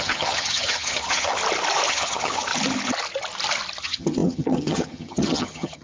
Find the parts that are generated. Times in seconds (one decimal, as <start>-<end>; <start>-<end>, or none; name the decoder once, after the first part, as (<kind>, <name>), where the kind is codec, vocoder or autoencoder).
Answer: 0.0-1.4 (vocoder, HiFi-GAN); 1.9-2.5; 3.8-5.8